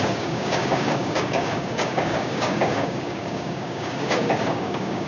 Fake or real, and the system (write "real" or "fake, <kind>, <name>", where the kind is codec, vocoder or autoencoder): fake, codec, DAC